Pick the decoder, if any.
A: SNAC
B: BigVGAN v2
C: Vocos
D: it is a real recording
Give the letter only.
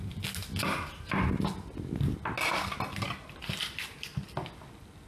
D